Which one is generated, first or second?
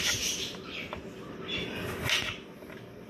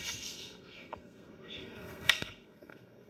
second